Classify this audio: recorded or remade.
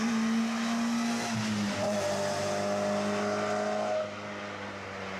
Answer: recorded